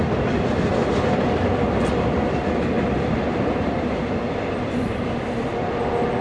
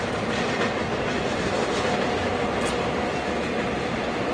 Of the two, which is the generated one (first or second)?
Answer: first